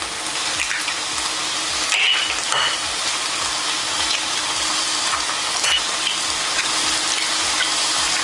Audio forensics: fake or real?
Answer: real